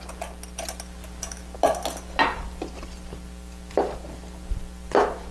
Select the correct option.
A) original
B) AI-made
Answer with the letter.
A